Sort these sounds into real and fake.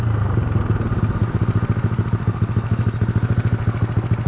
real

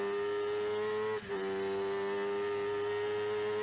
real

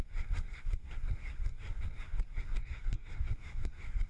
fake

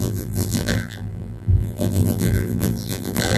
fake